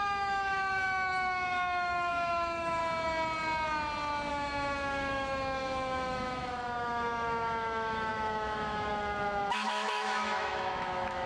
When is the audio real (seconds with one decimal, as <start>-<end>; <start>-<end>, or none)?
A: 2.8-4.3